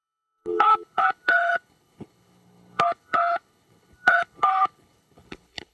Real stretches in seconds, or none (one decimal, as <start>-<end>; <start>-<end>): none